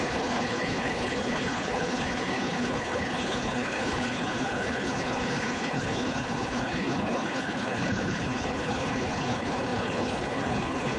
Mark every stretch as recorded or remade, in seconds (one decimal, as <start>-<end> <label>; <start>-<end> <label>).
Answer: 0.0-11.0 remade